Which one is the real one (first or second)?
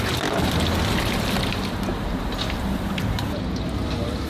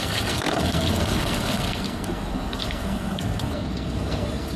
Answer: first